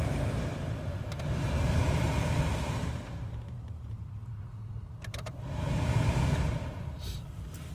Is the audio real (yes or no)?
no